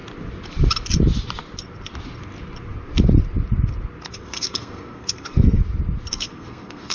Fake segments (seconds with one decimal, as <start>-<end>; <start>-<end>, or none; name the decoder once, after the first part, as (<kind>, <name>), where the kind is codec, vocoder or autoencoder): 4.1-5.6 (codec, SNAC); 6.1-6.9